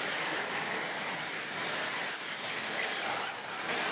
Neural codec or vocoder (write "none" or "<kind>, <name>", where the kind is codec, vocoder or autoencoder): none